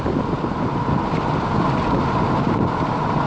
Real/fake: real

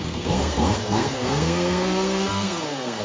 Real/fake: fake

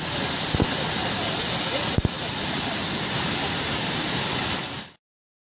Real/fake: real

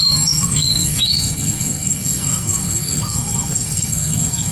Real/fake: fake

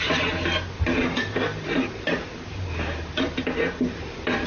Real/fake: fake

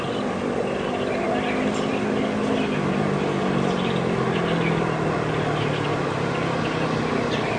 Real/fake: real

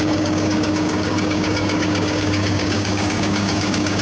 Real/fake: fake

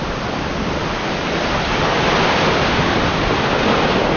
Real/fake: real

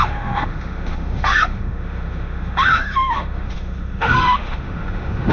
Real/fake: fake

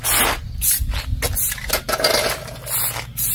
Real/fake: real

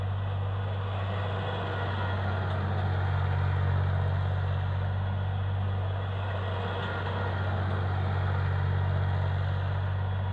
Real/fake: real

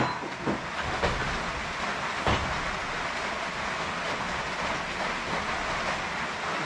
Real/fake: real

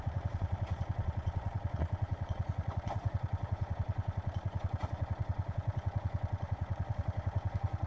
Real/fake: fake